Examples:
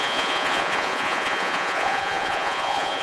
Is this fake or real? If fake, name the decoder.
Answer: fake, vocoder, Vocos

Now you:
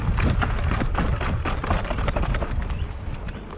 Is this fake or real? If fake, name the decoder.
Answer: real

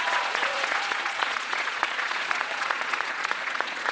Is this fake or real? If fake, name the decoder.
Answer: fake, vocoder, Vocos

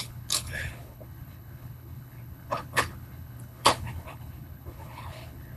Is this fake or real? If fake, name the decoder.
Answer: fake, codec, HILCodec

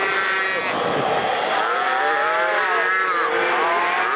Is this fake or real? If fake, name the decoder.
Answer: real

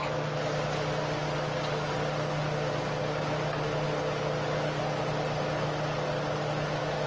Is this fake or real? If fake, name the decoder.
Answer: real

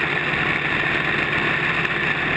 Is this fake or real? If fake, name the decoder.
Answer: real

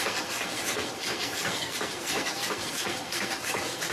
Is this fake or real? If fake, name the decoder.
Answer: fake, codec, SNAC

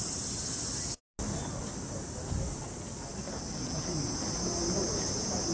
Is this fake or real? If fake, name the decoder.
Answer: real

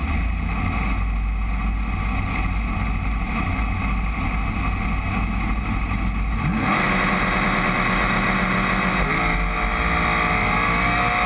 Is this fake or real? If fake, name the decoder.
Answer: real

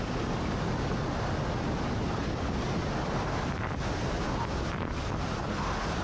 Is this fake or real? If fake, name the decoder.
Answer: real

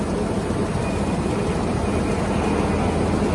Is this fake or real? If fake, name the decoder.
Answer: real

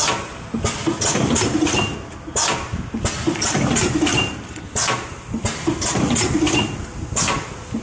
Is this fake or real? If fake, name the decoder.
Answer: real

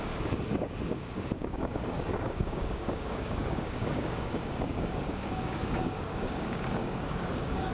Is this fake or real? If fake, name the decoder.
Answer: fake, codec, DAC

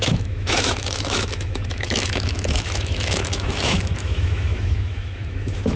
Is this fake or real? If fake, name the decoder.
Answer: fake, autoencoder, DAC-VAE